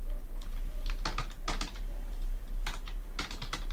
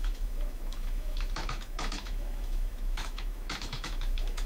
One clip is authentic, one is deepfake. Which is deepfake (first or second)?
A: second